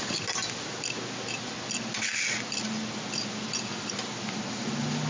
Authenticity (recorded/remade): recorded